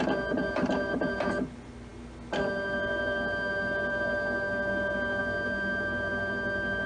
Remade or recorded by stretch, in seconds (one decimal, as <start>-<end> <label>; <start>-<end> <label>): 0.0-6.9 recorded